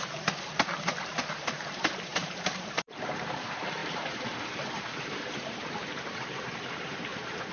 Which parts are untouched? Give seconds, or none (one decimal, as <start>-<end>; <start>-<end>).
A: none